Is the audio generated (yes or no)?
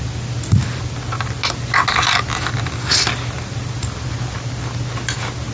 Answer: no